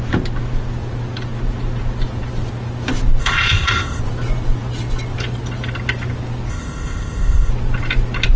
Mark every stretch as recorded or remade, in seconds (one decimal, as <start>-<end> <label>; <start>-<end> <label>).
0.0-3.2 recorded; 3.2-4.0 remade; 4.0-6.5 recorded; 6.5-7.5 remade; 7.5-8.4 recorded